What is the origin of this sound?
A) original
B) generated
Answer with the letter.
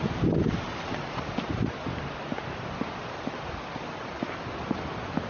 A